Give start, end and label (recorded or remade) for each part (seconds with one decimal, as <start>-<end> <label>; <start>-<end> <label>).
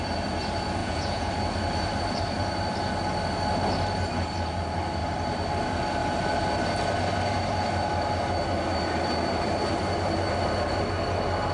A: 0.0-0.8 recorded; 0.8-1.3 remade; 1.3-11.5 recorded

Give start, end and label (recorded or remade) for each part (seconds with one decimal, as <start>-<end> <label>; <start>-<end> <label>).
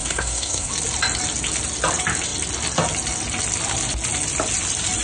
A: 0.0-0.7 remade; 0.7-5.0 recorded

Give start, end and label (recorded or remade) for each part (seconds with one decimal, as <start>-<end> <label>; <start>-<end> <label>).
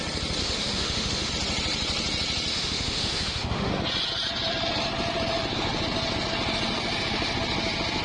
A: 0.0-0.4 recorded; 0.4-1.3 remade; 1.3-2.5 recorded; 2.5-3.7 remade; 3.7-8.0 recorded